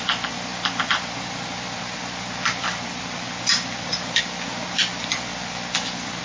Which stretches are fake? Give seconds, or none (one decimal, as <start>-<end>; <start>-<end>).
none